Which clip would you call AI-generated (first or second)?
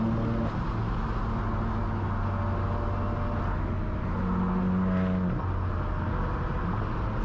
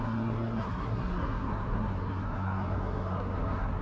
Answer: second